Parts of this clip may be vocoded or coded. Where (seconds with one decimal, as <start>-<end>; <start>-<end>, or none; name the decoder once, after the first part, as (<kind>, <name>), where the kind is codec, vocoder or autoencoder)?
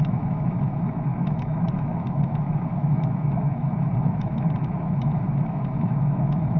0.0-6.6 (autoencoder, DAC-VAE)